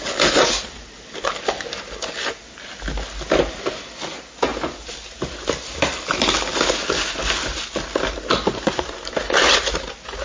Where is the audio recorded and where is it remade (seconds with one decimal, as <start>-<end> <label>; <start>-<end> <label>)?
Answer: 0.0-10.2 recorded